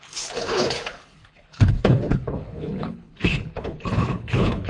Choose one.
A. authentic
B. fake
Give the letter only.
B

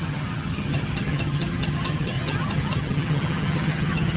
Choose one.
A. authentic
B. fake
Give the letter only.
B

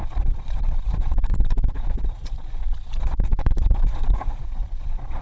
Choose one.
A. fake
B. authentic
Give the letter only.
A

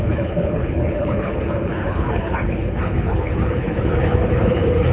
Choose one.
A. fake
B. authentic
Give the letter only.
A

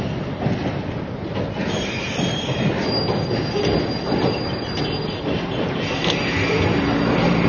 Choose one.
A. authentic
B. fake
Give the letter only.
A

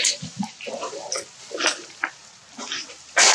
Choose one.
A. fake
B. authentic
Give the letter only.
B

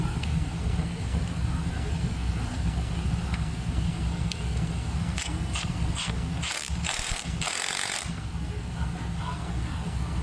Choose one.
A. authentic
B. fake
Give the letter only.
B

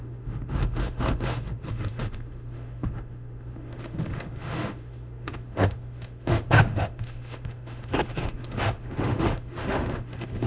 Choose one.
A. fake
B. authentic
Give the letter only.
A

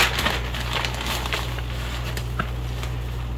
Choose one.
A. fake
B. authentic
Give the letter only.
B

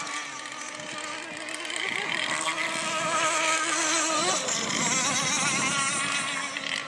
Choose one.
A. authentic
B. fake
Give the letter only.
A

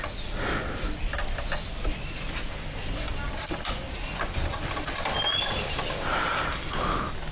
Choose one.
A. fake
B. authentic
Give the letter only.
B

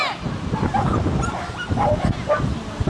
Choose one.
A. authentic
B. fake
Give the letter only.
A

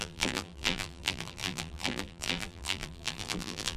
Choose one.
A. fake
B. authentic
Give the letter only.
A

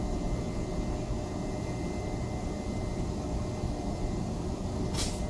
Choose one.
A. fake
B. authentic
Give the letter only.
B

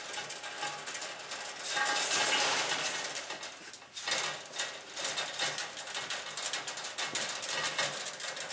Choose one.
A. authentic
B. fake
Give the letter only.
A